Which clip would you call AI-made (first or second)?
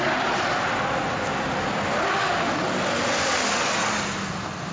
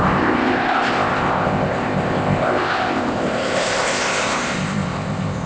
second